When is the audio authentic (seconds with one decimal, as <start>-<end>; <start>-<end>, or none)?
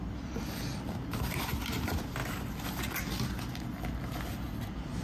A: 0.0-5.0